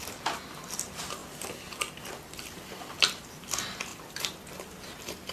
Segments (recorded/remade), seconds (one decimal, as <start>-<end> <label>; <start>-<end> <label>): 0.0-5.3 recorded